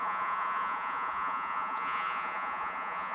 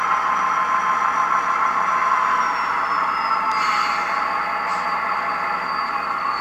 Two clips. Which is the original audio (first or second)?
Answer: second